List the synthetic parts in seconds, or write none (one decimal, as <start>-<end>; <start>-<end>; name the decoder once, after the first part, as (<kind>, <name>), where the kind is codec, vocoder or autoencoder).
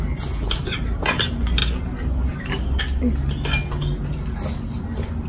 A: none